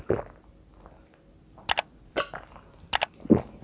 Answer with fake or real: real